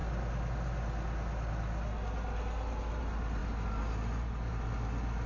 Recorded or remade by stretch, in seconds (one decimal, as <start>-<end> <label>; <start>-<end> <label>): 0.0-5.3 recorded